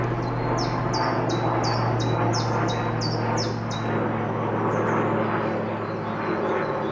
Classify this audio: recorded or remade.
recorded